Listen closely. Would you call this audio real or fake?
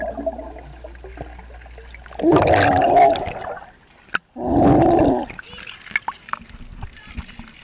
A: real